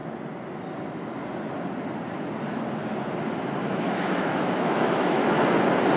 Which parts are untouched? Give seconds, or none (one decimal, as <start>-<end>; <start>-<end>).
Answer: 0.0-3.6; 5.4-6.0